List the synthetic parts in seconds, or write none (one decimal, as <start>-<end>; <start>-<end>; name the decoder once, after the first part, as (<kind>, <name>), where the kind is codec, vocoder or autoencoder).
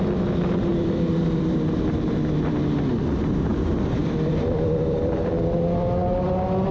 0.7-1.7 (vocoder, BigVGAN v2); 3.5-5.3